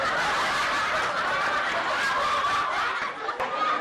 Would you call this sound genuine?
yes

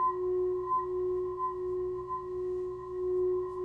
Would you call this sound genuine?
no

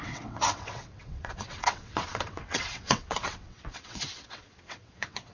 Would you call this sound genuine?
no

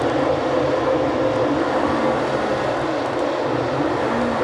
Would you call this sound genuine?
yes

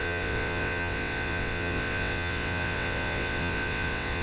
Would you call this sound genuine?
no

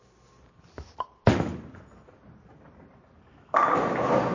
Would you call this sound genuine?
yes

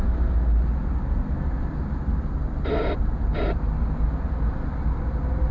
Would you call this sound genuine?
yes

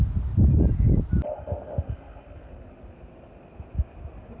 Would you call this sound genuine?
yes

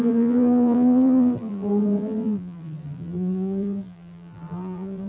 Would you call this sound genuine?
no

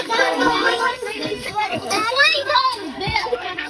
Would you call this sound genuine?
no